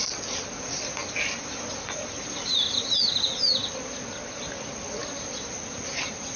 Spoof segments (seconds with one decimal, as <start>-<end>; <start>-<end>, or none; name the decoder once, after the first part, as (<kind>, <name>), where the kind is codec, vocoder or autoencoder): none